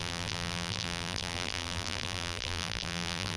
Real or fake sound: fake